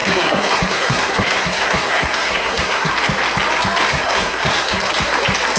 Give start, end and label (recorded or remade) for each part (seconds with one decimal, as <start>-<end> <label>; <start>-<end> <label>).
0.0-2.9 remade; 2.9-3.9 recorded; 3.9-4.9 remade; 4.9-5.6 recorded